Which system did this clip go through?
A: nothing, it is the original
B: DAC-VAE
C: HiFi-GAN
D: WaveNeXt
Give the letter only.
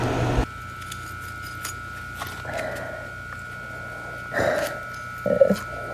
A